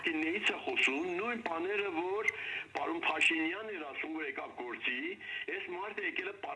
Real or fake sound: real